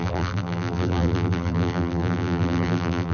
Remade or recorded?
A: remade